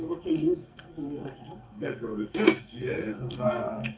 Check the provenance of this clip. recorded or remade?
remade